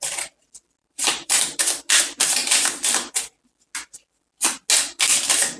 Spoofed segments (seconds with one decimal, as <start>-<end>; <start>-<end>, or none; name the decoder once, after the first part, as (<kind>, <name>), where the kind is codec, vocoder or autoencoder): 0.8-1.4 (vocoder, BigVGAN v2); 2.4-3.2